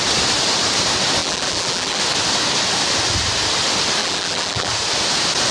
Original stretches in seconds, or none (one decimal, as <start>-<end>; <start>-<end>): 0.0-1.2; 2.0-4.0; 4.7-5.5